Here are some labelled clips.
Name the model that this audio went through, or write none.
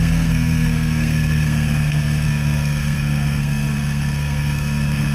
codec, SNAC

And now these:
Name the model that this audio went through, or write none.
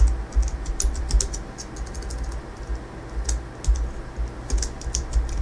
none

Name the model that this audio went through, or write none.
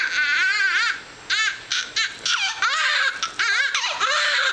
none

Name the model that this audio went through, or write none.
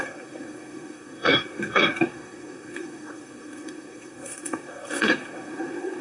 codec, SNAC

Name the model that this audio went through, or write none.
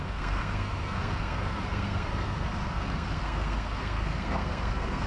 codec, SNAC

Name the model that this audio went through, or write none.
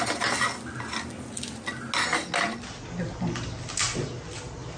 none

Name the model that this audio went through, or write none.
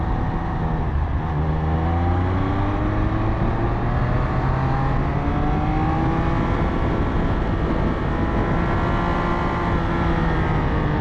none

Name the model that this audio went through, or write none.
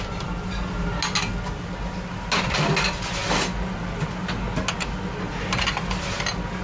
none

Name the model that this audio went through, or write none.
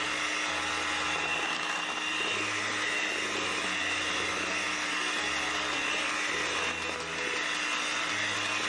none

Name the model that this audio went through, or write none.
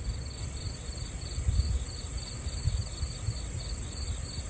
none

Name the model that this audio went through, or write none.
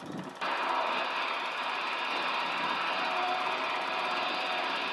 none